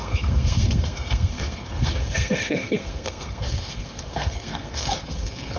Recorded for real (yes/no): no